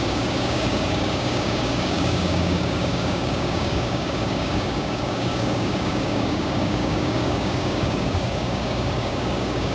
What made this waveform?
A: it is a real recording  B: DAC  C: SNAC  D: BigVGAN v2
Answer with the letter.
B